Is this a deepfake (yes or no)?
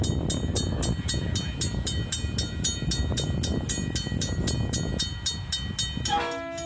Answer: no